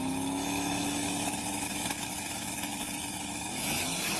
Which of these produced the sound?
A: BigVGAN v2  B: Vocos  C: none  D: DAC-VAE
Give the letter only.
D